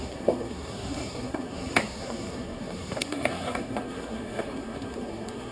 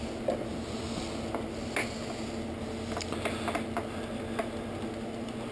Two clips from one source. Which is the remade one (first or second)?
first